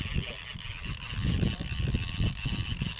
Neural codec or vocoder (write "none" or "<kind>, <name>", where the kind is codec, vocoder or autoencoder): none